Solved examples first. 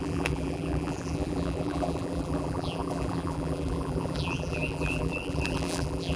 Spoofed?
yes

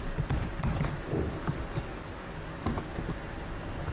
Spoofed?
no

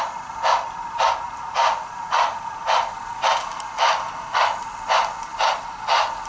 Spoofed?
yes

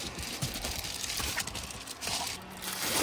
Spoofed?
no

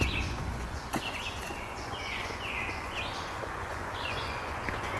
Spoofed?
yes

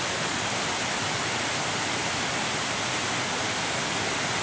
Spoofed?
no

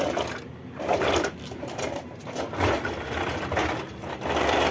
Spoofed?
no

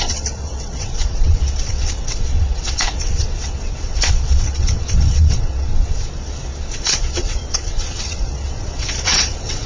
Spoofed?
yes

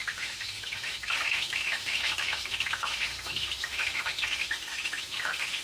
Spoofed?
yes